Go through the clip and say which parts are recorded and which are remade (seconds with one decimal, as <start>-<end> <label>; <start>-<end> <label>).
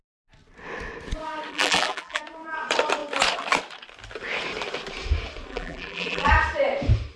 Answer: 0.0-1.5 recorded; 1.5-2.2 remade; 2.2-5.5 recorded; 5.5-6.3 remade; 6.3-7.2 recorded